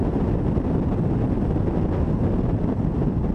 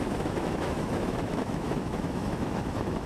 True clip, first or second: first